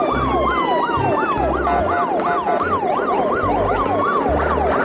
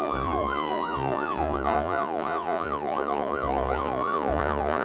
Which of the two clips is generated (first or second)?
second